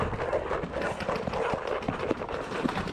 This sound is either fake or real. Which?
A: real